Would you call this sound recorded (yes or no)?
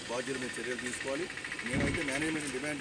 yes